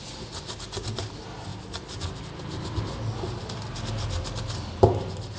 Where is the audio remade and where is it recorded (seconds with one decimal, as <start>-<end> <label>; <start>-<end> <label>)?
0.0-1.5 recorded; 1.5-2.2 remade; 2.2-5.4 recorded